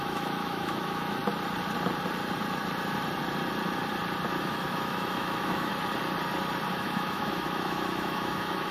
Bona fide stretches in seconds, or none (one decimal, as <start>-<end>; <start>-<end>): 1.2-4.4; 5.7-6.7